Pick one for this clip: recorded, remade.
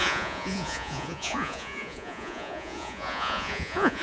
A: remade